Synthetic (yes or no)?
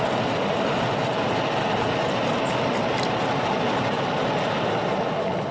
no